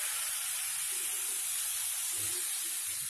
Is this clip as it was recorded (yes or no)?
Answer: yes